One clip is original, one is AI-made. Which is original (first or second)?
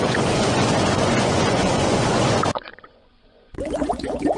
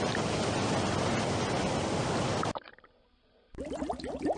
second